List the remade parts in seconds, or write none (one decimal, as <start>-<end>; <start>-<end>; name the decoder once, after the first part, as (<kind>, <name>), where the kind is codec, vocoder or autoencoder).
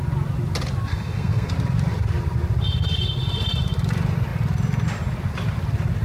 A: 0.9-1.5 (codec, SNAC)